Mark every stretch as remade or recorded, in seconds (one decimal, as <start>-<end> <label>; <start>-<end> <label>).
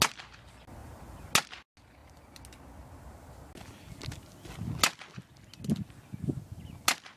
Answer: 0.0-0.8 recorded; 0.8-1.3 remade; 1.3-7.2 recorded